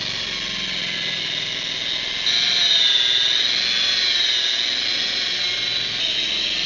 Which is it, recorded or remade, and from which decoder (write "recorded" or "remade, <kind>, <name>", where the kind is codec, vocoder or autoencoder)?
recorded